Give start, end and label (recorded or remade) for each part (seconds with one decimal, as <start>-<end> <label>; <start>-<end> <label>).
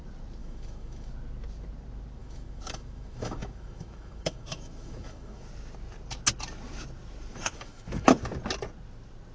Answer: 0.0-0.4 recorded; 0.4-1.1 remade; 1.1-2.2 recorded; 2.2-5.5 remade; 5.5-7.3 recorded; 7.3-8.2 remade; 8.2-9.3 recorded